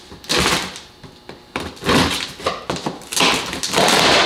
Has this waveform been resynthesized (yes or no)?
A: no